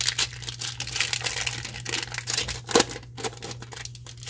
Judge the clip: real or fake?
real